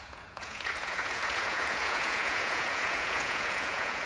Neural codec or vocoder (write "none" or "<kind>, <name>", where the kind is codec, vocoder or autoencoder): vocoder, Vocos